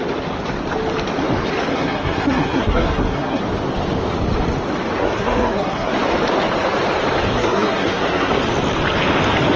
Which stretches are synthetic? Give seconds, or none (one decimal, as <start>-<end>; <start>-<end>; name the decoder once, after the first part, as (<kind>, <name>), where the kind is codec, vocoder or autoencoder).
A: 1.7-3.4 (codec, SNAC); 5.0-5.9; 7.3-8.3